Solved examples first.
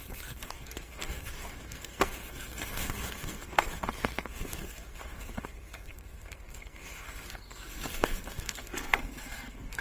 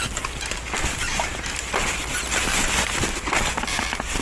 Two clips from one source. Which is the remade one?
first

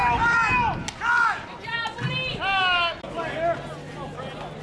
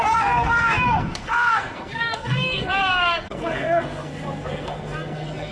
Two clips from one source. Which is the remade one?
second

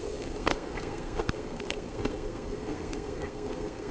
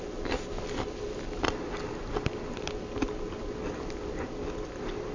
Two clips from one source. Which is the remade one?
first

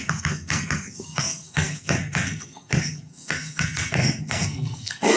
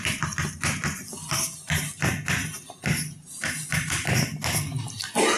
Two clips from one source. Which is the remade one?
first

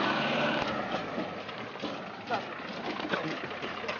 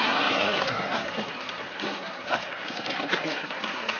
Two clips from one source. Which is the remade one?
second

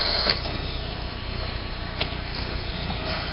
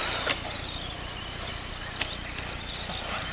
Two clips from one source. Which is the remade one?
first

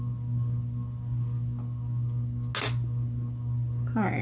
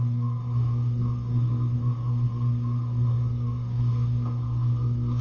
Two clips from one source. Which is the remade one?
second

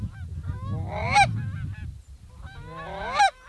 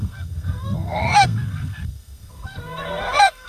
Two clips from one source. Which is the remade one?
second